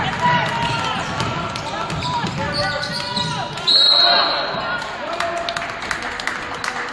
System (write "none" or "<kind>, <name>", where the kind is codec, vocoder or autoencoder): none